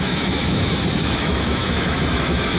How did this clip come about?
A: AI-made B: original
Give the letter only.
A